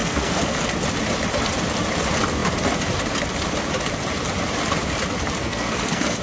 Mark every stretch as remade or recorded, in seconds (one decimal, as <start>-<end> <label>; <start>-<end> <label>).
0.0-0.7 remade; 0.7-5.4 recorded; 5.4-6.2 remade